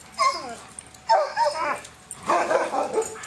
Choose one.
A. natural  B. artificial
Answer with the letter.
A